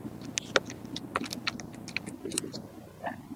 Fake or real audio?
real